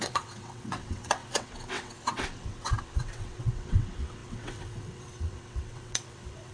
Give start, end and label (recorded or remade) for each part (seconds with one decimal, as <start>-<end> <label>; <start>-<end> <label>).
0.0-6.5 remade

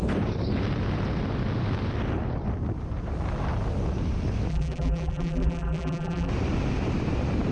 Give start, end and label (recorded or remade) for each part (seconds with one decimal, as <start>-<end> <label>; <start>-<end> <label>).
0.0-4.5 recorded; 4.5-6.3 remade; 6.3-7.5 recorded

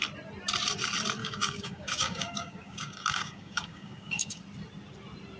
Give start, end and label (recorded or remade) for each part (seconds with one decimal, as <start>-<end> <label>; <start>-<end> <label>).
0.0-1.2 recorded; 1.2-4.4 remade; 4.4-5.4 recorded

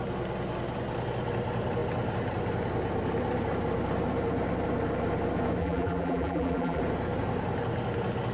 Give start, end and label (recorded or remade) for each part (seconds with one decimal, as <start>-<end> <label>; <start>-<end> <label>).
0.0-5.6 recorded; 5.6-6.8 remade; 6.8-8.3 recorded

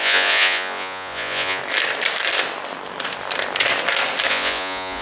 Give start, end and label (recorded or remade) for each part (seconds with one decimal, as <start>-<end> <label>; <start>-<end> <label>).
0.0-1.6 remade; 1.6-4.3 recorded; 4.3-5.0 remade

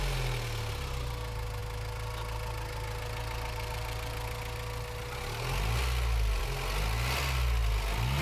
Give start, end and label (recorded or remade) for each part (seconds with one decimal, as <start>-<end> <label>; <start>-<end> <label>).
0.0-8.2 recorded

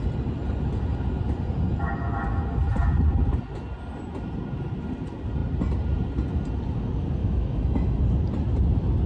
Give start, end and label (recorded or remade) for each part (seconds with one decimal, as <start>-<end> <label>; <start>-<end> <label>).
0.0-7.2 recorded; 7.2-8.0 remade; 8.0-9.1 recorded